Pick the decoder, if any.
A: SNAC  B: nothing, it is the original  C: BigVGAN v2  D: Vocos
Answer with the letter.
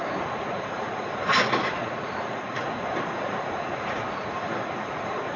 D